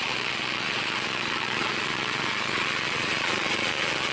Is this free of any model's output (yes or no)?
no